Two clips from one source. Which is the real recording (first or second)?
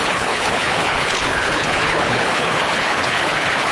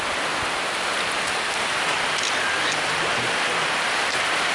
second